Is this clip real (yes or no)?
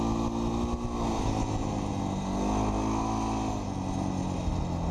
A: yes